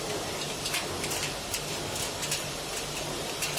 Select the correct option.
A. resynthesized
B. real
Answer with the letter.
B